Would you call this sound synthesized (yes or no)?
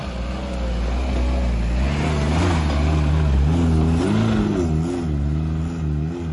no